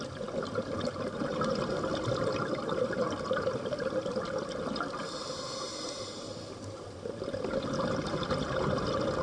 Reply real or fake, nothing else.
real